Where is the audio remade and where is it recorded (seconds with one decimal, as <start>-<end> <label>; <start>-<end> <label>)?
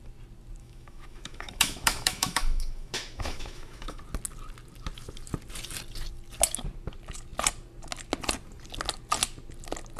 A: 0.0-0.6 recorded; 0.6-4.0 remade; 4.0-10.0 recorded